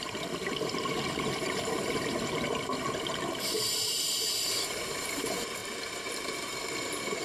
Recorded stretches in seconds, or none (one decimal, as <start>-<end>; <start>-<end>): none